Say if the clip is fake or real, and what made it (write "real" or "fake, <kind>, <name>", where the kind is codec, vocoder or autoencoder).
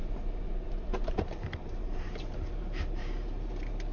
fake, vocoder, BigVGAN v2